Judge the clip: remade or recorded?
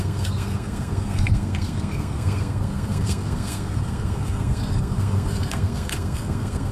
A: remade